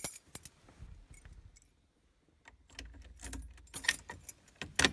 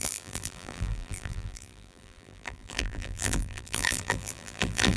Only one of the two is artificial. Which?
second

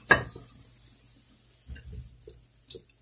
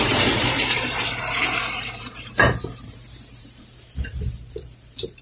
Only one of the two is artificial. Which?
second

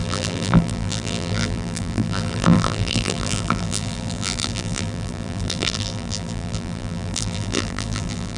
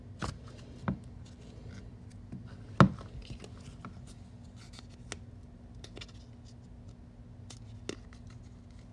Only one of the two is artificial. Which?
first